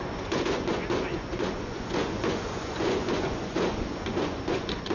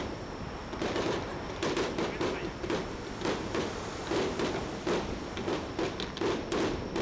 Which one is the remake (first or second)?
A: first